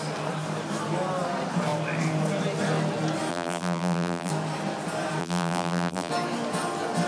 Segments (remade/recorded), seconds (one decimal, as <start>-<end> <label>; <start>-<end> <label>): 0.0-3.3 recorded; 3.3-4.3 remade; 4.3-5.2 recorded; 5.2-6.1 remade; 6.1-7.1 recorded